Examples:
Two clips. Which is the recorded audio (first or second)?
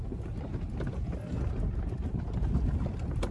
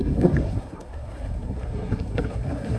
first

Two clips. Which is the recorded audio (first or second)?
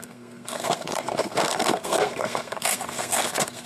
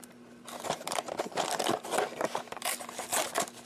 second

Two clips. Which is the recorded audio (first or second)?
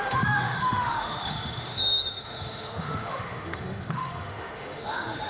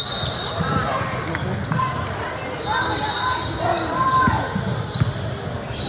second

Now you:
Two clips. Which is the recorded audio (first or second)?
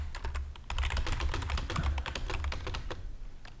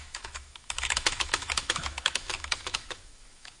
first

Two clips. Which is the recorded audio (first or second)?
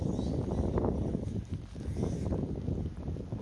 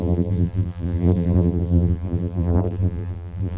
first